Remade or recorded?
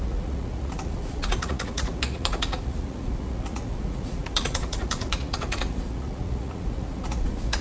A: remade